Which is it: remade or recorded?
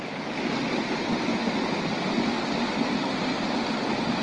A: recorded